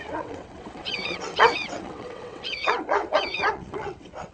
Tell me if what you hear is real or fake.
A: fake